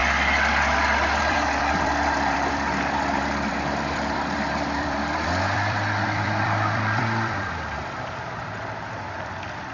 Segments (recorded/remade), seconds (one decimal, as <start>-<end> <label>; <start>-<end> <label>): 0.0-1.2 recorded; 1.2-9.7 remade